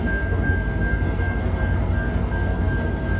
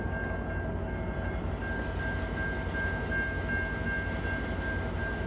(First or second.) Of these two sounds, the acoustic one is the second